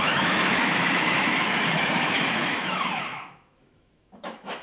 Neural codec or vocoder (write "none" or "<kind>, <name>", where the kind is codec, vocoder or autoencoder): autoencoder, DAC-VAE